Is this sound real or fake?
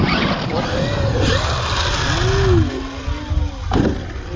real